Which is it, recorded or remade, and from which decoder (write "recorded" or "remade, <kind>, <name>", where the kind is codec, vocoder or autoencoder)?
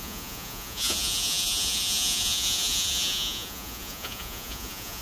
remade, vocoder, Vocos